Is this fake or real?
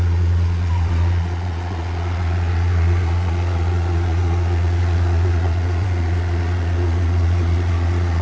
fake